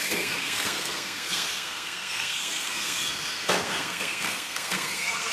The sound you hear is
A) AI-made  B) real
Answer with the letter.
A